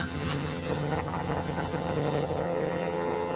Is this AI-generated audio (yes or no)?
yes